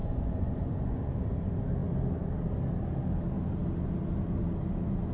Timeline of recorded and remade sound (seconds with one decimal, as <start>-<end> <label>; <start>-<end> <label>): 0.0-1.1 remade; 1.1-5.1 recorded